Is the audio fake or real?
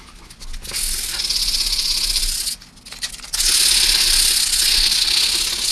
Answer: real